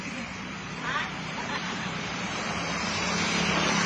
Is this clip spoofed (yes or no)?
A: yes